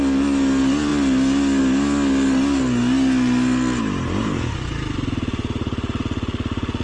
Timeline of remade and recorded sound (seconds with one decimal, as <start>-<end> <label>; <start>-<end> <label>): 0.0-4.2 recorded; 4.2-6.0 remade; 6.0-6.8 recorded